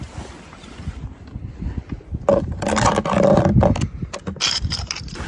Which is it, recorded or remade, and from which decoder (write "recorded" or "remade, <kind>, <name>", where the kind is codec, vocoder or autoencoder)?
recorded